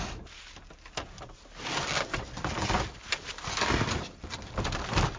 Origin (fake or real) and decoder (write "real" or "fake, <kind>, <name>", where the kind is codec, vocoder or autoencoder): real